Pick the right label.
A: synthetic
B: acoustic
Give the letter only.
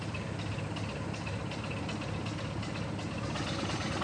B